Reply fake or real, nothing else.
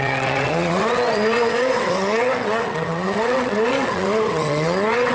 fake